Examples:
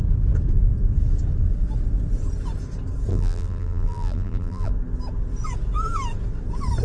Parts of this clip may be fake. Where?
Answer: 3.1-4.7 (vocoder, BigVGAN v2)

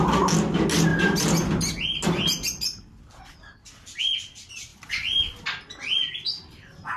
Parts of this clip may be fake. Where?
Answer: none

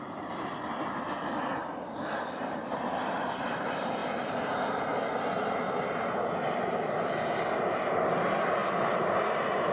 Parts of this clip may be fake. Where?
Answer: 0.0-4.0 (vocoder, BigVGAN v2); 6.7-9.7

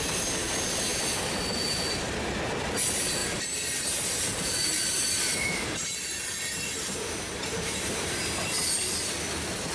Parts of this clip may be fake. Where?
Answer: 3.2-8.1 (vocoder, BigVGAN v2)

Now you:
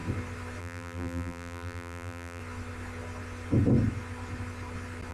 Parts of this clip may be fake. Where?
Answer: 0.6-2.4 (vocoder, BigVGAN v2)

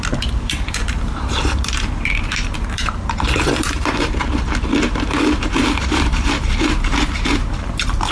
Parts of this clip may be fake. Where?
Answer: 0.0-4.3 (vocoder, BigVGAN v2); 4.9-8.1

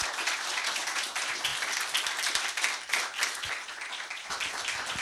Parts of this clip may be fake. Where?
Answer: none